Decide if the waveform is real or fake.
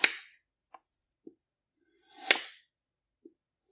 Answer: real